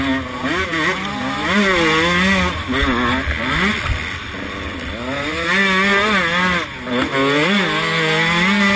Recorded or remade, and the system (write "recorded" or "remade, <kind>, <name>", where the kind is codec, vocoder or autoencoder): recorded